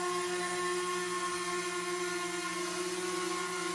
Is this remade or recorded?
recorded